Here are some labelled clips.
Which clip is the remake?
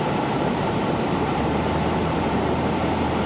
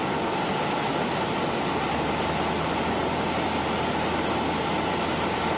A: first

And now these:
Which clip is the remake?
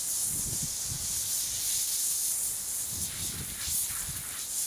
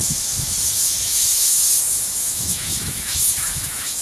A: second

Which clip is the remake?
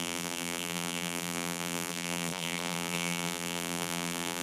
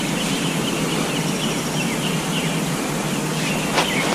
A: first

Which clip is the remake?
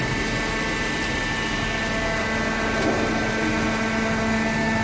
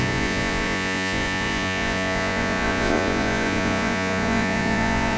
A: second